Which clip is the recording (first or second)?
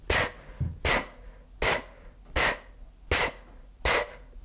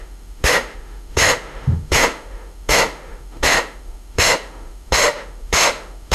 first